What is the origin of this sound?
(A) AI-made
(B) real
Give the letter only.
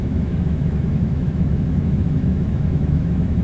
A